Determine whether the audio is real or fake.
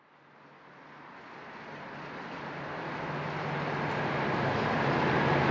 real